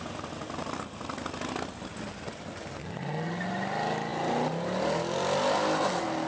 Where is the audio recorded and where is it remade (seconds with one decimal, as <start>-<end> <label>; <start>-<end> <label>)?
0.0-6.3 recorded